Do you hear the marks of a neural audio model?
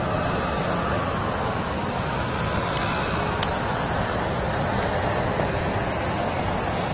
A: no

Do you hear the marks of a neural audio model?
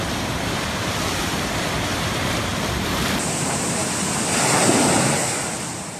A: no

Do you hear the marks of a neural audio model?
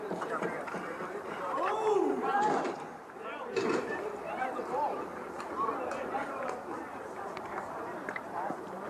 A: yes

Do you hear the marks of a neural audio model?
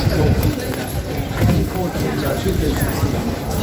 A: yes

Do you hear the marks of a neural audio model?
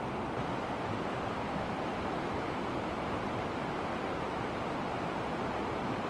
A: no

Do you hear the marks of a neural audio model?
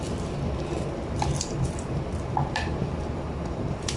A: yes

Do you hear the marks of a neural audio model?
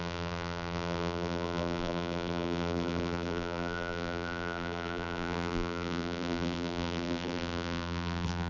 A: yes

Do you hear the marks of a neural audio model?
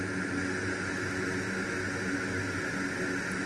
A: no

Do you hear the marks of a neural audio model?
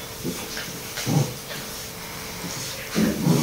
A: no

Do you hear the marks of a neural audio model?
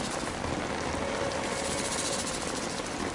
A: no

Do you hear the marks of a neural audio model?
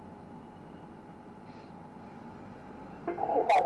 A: yes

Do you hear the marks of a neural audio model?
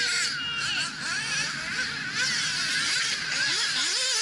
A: no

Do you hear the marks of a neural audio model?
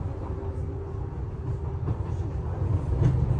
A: no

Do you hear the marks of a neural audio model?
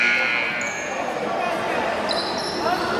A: no